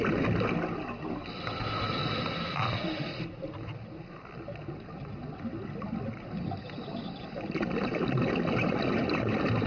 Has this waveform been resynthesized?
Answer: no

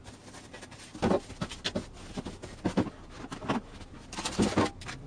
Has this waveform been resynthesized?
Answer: no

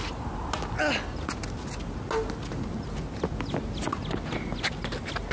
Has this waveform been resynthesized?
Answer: no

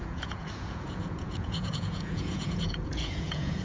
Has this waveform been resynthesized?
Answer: yes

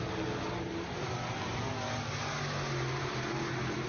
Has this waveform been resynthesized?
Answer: no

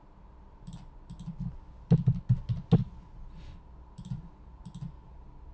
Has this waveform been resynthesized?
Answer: no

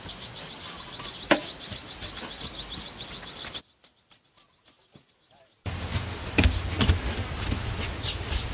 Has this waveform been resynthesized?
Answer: no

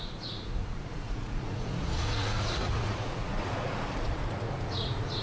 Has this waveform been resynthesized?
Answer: yes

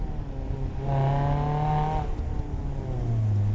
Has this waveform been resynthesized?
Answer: no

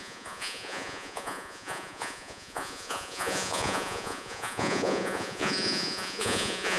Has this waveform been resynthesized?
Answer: yes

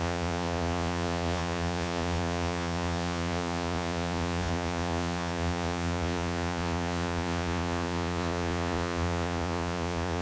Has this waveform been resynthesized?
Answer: yes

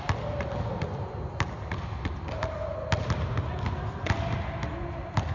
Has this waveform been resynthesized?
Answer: no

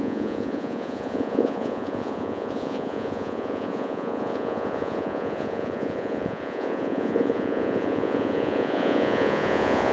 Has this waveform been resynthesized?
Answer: yes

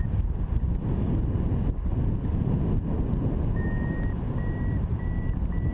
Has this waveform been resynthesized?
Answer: no